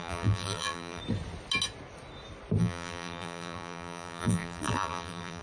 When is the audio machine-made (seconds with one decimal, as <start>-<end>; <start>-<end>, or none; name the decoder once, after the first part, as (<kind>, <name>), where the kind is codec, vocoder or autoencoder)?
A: 0.0-1.0 (vocoder, BigVGAN v2); 2.6-5.4